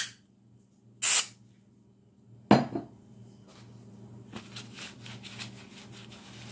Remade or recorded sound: recorded